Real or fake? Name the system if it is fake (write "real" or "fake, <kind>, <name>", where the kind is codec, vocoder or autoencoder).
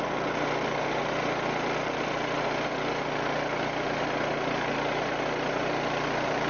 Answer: real